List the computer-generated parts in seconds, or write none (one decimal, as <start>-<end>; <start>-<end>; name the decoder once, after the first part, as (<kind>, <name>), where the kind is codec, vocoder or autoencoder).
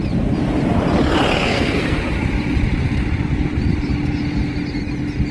1.4-2.0 (codec, SNAC)